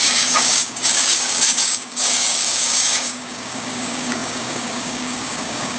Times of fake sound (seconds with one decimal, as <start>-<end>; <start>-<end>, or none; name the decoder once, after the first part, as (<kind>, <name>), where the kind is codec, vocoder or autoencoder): 0.0-5.8 (codec, DAC)